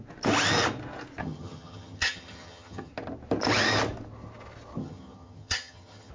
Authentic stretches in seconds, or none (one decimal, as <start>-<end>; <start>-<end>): 0.0-1.2; 2.9-4.8